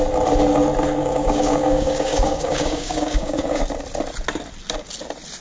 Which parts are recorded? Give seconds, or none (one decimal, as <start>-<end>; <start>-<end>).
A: 0.0-1.0; 3.6-5.4